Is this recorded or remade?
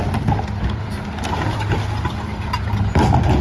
recorded